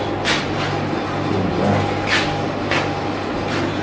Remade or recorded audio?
recorded